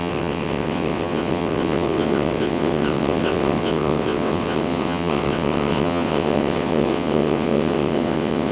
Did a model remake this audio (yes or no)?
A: yes